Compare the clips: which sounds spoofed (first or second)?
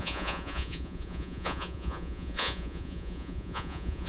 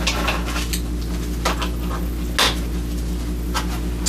first